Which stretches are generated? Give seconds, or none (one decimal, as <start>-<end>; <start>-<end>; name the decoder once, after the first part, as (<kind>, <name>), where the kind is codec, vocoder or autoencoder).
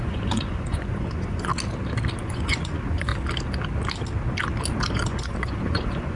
0.0-1.5 (vocoder, Vocos); 2.2-3.1; 4.9-6.2